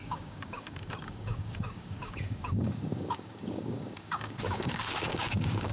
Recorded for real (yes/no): no